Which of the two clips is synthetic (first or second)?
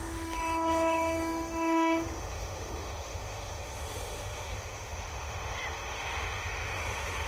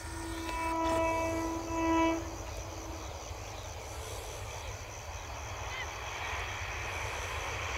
first